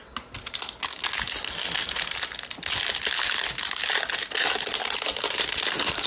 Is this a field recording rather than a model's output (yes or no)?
yes